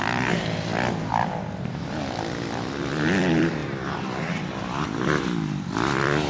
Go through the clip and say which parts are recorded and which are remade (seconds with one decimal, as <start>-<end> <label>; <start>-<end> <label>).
0.0-0.7 remade; 0.7-1.2 recorded; 1.2-6.3 remade

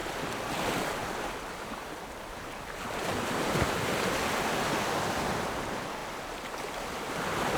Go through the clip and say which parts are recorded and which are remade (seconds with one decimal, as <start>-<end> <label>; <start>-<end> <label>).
0.0-6.0 remade; 6.0-7.6 recorded

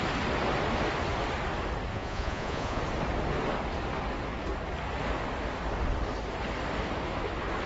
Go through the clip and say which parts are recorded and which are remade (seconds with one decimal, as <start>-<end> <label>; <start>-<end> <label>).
0.0-1.9 recorded; 1.9-2.8 remade; 2.8-7.7 recorded